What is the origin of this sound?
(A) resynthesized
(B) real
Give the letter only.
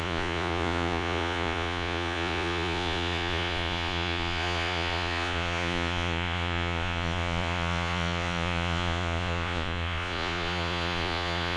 A